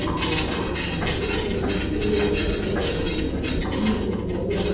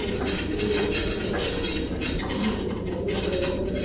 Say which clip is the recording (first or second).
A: first